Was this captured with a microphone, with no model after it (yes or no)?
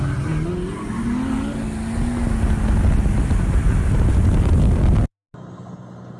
yes